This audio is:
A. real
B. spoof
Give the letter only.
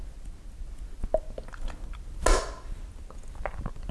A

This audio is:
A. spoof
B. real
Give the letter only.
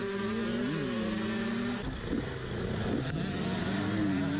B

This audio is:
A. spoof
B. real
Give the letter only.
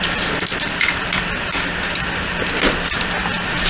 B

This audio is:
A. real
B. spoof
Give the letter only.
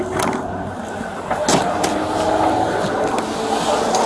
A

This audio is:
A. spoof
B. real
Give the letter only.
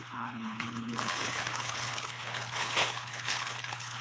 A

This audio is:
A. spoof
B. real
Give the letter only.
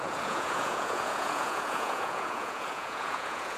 A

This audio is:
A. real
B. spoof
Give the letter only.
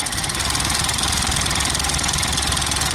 A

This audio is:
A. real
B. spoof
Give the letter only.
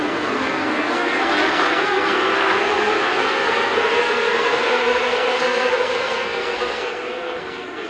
B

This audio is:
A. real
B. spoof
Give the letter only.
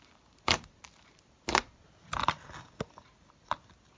A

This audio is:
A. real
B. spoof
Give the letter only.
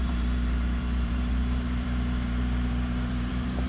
B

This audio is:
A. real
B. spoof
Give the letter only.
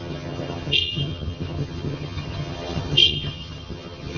B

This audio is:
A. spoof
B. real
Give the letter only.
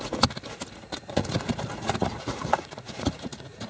A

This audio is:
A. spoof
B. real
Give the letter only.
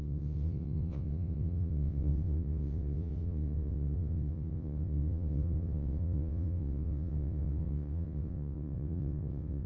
A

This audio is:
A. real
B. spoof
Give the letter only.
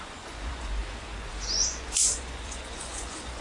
B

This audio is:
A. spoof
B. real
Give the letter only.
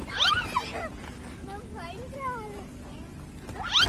B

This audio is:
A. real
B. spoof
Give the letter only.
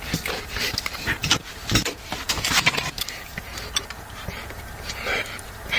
B